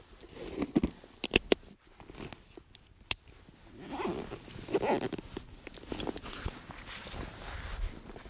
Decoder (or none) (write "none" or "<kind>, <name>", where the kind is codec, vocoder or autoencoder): none